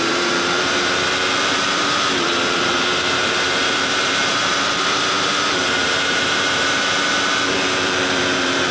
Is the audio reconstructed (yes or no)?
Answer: yes